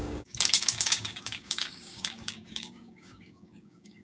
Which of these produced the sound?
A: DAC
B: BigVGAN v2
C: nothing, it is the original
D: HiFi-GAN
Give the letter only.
A